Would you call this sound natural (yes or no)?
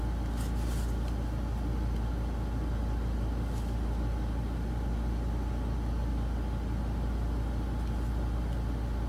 yes